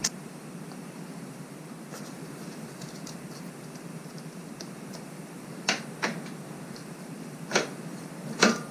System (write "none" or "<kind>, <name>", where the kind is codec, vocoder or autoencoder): vocoder, BigVGAN v2